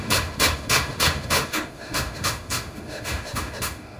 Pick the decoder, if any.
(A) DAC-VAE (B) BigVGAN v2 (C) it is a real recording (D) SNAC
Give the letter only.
A